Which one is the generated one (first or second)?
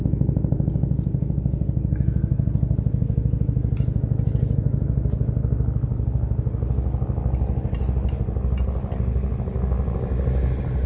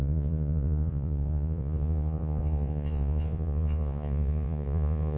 second